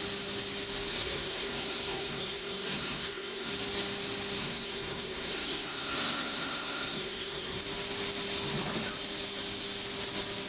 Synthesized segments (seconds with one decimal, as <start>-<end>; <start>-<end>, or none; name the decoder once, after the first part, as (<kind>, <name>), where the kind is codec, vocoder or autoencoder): 0.9-3.5 (codec, SNAC); 4.4-7.6

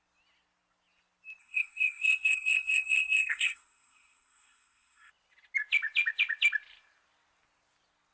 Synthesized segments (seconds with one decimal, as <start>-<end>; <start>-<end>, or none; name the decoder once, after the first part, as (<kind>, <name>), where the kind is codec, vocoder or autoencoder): 1.4-5.1 (codec, SNAC)

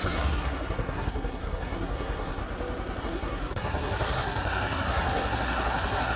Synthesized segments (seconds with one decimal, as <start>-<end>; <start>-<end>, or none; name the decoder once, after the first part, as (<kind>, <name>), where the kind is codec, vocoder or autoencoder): 0.0-2.4 (codec, SNAC); 3.0-6.2

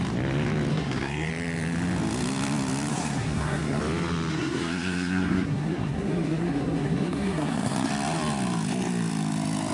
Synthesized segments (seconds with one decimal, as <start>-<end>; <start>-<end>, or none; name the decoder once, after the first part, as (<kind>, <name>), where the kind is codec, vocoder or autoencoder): 0.7-1.3 (codec, SNAC); 2.9-3.8; 4.3-7.9